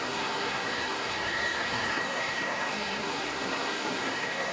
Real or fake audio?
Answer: fake